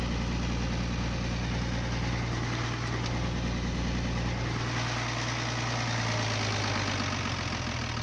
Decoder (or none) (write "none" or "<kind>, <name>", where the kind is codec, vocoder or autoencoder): none